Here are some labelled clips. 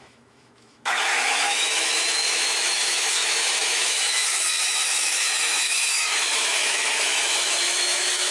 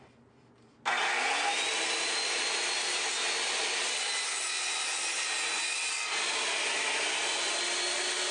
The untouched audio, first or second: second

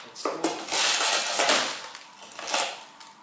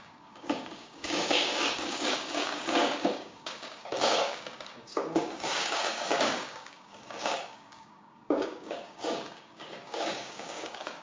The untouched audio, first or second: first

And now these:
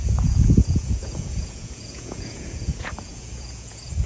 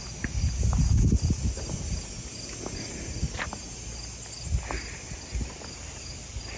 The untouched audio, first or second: second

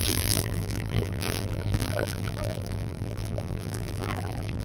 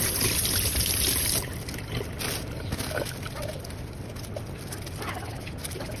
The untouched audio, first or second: second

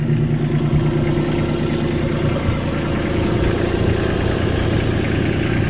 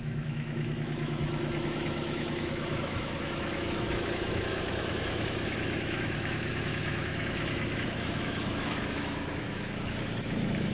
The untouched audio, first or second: first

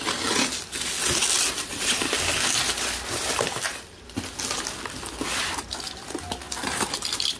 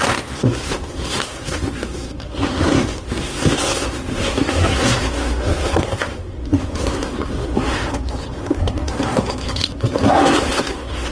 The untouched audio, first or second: first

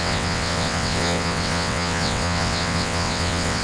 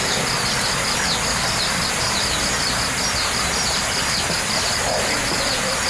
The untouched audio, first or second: second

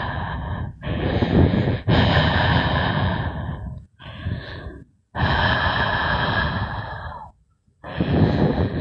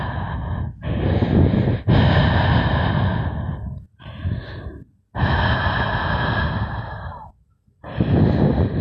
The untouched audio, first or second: second